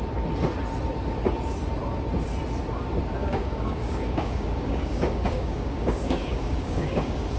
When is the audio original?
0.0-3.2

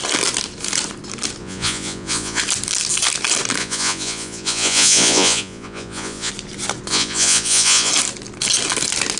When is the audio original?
0.0-1.4; 2.4-3.6; 6.3-6.9; 7.9-9.2

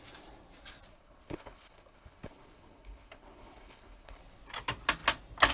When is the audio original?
0.0-0.9; 4.2-5.5

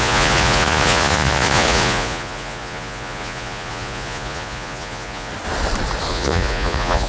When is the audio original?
5.3-6.1

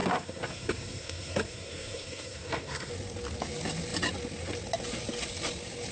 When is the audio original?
2.9-5.9